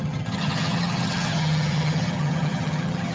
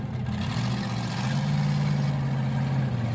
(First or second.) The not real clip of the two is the first